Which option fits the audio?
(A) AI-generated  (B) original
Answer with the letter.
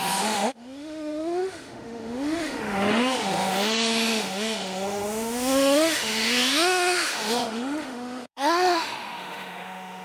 A